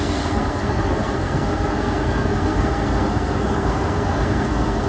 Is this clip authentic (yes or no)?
no